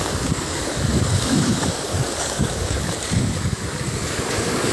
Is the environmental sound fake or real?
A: fake